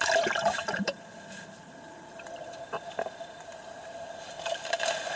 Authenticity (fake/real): fake